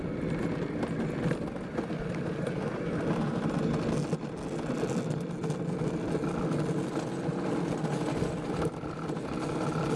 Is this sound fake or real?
real